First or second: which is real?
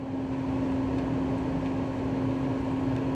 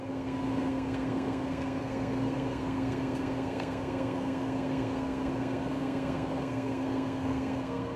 first